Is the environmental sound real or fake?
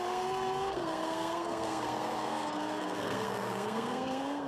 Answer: fake